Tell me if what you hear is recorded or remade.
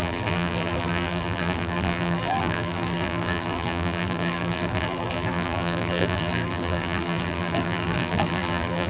remade